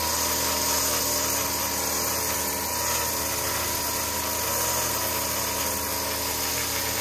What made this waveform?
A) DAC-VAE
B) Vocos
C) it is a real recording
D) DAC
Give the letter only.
C